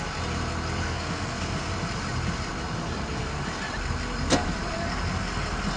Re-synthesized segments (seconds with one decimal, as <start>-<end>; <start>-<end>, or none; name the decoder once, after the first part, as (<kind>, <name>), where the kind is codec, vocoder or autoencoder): 0.8-1.7 (codec, SNAC)